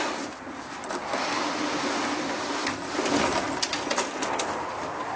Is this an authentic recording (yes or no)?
yes